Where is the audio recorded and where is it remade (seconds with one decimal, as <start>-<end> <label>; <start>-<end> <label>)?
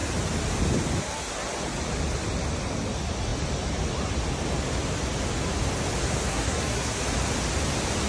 0.0-6.3 recorded; 6.3-7.0 remade; 7.0-8.1 recorded